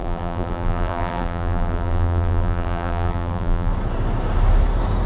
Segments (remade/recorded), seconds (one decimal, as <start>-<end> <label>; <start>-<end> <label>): 0.0-3.7 remade; 3.7-5.1 recorded